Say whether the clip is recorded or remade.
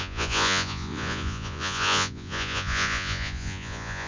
remade